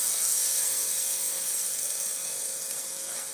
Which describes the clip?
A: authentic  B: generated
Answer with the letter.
B